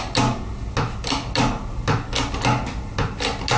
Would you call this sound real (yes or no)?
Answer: yes